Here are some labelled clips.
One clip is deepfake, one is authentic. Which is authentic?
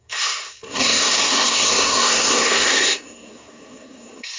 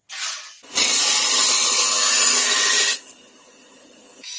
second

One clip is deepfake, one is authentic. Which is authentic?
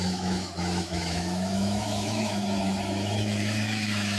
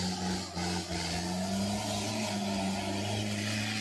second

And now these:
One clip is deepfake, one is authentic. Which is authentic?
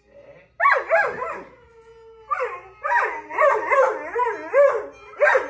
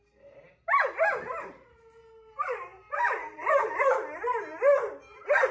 first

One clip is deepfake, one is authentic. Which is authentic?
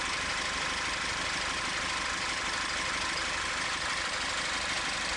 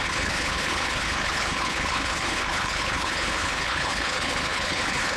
first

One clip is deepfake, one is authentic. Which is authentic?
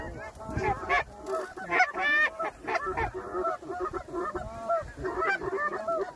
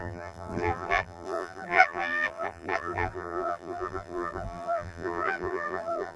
first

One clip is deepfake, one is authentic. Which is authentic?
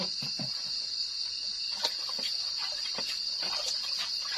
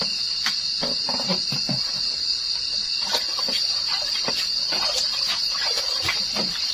first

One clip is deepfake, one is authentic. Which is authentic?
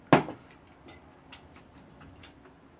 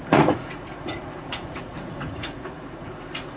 first